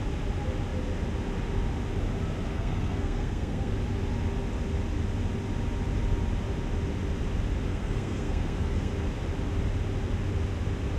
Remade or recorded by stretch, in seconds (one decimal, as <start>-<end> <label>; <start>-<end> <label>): 0.0-2.5 recorded; 2.5-3.7 remade; 3.7-7.7 recorded; 7.7-8.9 remade; 8.9-11.0 recorded